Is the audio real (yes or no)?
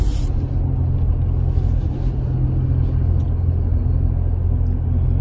yes